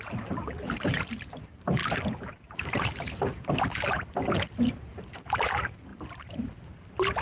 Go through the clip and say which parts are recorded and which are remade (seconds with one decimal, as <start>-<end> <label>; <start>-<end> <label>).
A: 0.0-1.8 remade; 1.8-2.3 recorded; 2.3-3.3 remade; 3.3-3.9 recorded; 3.9-7.2 remade